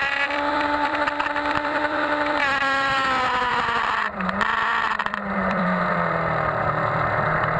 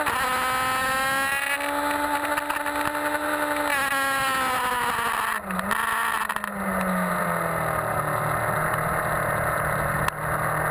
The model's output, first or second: first